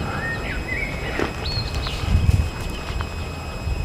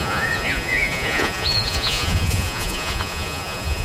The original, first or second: first